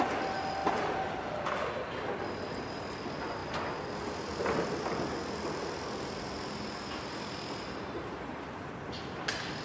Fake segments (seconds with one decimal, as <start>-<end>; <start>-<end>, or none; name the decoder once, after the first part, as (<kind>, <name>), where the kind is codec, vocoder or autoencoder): none